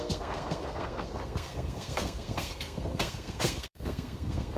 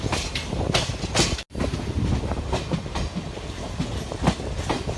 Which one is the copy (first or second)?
first